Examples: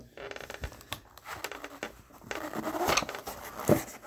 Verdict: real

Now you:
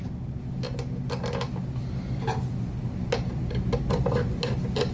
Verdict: real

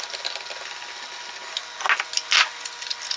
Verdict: real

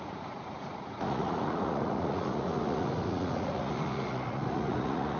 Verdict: fake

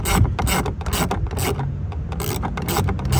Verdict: real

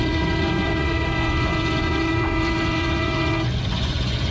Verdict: fake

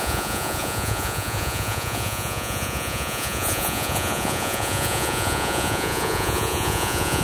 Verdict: fake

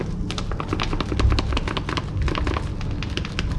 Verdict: real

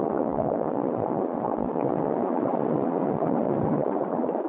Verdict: fake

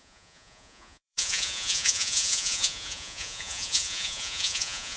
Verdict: fake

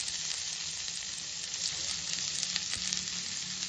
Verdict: real